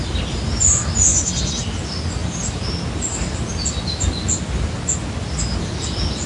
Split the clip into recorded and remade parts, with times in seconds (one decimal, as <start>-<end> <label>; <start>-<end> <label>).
0.0-6.3 recorded